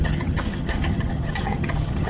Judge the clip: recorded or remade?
remade